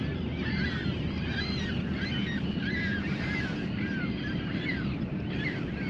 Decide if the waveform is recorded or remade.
recorded